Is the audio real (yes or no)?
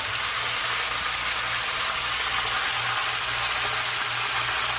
yes